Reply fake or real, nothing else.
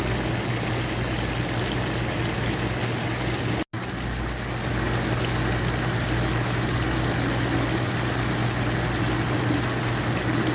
real